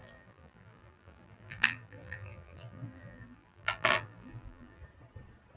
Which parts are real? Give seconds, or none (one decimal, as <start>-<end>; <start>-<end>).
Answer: 4.8-5.6